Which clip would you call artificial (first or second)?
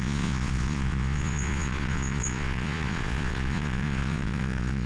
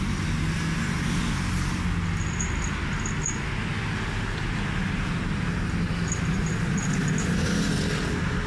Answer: first